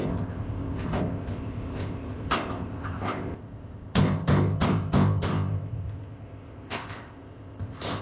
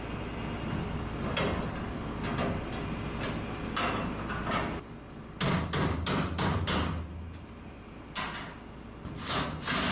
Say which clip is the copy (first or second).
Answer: first